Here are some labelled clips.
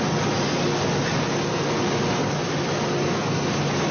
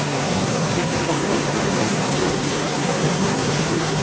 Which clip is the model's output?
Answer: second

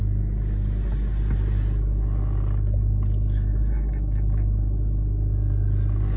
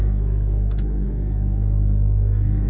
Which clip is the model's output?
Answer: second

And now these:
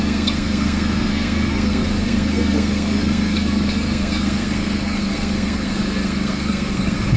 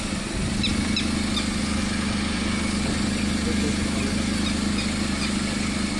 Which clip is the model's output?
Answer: first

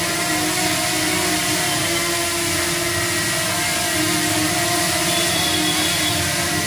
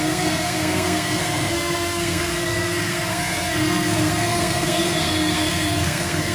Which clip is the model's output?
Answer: second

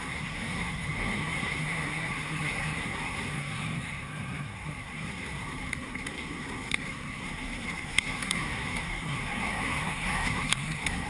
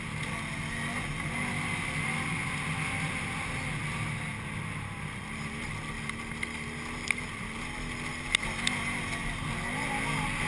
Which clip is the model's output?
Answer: first